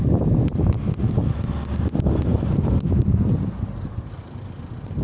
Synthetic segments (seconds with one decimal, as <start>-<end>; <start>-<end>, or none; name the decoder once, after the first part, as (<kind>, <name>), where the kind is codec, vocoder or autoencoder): none